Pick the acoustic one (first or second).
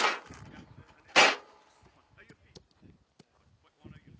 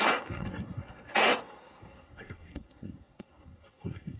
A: first